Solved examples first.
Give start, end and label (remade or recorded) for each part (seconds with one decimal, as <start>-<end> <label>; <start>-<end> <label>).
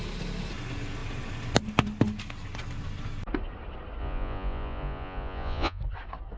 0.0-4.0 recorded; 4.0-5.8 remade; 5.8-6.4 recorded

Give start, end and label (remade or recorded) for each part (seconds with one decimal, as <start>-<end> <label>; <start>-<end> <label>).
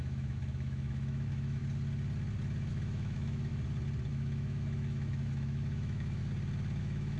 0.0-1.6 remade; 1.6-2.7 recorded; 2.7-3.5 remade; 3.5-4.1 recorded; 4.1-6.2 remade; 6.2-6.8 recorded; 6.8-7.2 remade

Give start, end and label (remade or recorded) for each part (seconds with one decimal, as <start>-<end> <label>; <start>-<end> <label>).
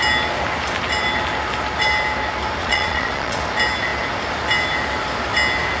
0.0-2.6 recorded; 2.6-3.4 remade; 3.4-5.8 recorded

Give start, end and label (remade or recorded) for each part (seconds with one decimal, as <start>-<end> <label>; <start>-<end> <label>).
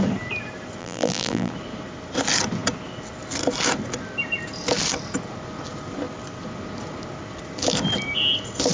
0.0-0.8 recorded; 0.8-1.5 remade; 1.5-8.7 recorded